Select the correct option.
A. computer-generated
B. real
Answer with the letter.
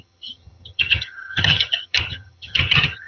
A